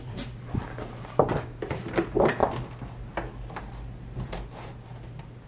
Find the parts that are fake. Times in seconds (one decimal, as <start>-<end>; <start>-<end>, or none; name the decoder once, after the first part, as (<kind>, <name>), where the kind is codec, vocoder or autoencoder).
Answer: none